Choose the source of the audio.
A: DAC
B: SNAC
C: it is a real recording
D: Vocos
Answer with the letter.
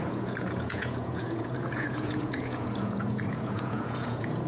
D